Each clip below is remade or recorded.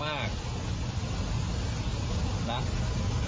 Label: recorded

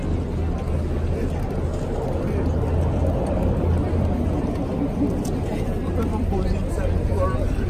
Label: recorded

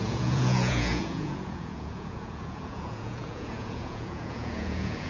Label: remade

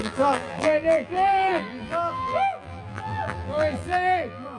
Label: remade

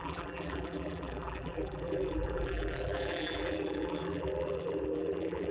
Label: remade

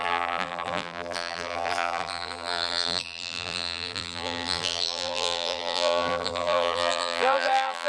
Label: remade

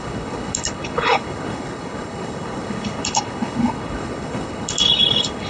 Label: remade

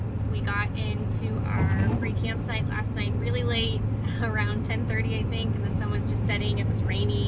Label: recorded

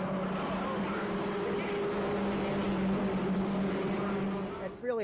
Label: recorded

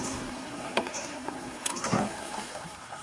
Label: remade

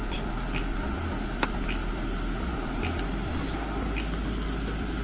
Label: recorded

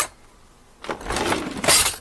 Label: recorded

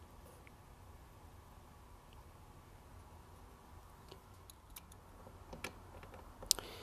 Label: recorded